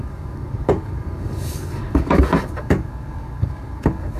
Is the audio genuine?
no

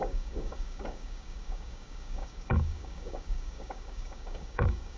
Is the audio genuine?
no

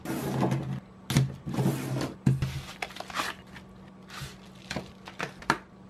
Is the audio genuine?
yes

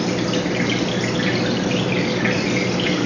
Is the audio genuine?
yes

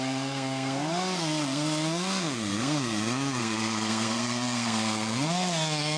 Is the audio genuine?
no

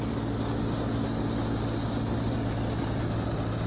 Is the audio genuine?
yes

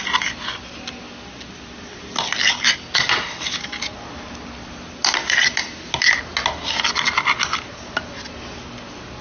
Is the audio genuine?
yes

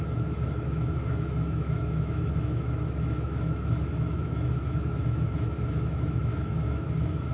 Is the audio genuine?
no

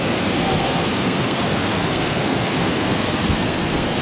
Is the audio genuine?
no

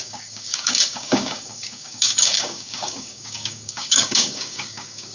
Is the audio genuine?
no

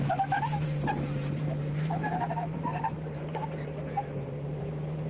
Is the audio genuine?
no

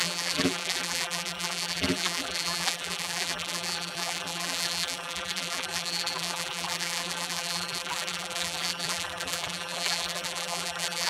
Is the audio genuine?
no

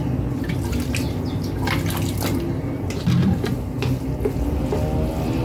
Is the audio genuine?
yes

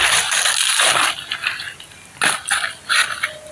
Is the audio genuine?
yes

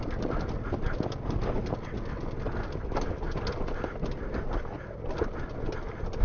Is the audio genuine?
yes